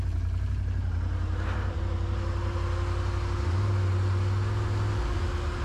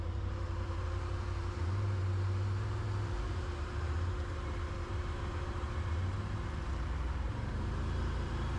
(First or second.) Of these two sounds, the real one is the first